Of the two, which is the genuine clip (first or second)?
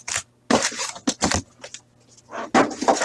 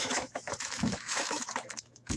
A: first